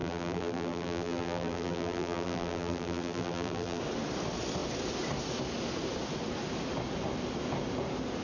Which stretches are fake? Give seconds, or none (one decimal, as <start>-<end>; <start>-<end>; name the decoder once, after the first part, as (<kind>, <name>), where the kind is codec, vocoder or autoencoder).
0.0-3.8 (vocoder, BigVGAN v2)

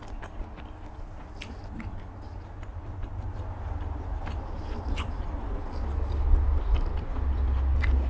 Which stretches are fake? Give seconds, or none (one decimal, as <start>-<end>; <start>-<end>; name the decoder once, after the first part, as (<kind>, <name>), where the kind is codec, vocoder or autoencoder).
2.7-5.6 (vocoder, BigVGAN v2)